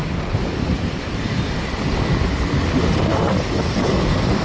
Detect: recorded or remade recorded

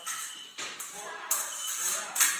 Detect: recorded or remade remade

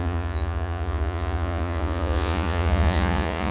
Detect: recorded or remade remade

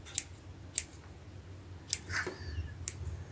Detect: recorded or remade recorded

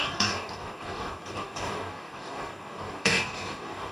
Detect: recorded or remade remade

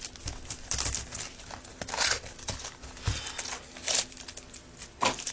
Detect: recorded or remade recorded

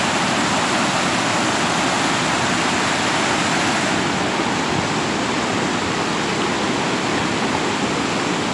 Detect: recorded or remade recorded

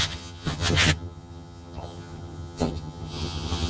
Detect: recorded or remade remade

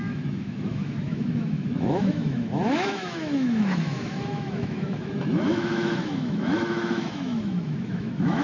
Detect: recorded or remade remade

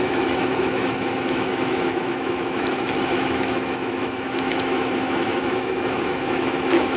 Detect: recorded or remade remade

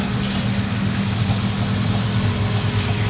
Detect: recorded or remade recorded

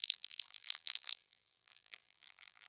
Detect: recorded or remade remade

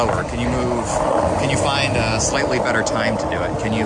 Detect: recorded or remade recorded